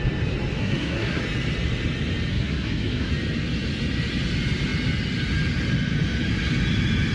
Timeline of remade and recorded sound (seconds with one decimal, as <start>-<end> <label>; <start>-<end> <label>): 0.0-0.6 recorded; 0.6-1.2 remade; 1.2-2.3 recorded; 2.3-3.1 remade; 3.1-7.1 recorded

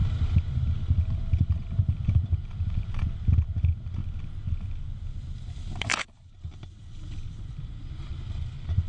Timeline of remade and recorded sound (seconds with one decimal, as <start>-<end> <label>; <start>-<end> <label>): 0.0-1.5 recorded; 1.5-4.0 remade; 4.0-4.8 recorded; 4.8-5.9 remade; 5.9-7.3 recorded; 7.3-8.1 remade; 8.1-8.9 recorded

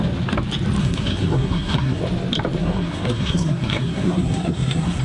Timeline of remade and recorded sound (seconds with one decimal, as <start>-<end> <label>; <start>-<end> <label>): 0.0-0.8 recorded; 0.8-2.0 remade; 2.0-2.6 recorded; 2.6-5.0 remade

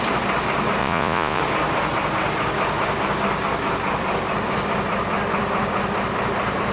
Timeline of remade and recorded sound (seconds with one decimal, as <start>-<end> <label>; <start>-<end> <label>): 0.0-0.8 recorded; 0.8-1.4 remade; 1.4-6.7 recorded